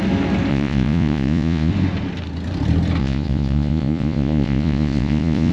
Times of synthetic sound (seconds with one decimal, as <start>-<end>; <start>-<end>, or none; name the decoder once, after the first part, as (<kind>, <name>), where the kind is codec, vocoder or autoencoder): 0.5-1.7 (vocoder, Vocos); 3.0-5.5